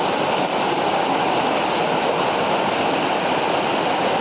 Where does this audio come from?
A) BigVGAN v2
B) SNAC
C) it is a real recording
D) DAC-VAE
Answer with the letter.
C